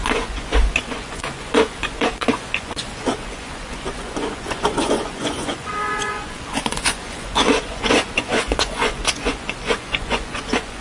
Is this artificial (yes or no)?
yes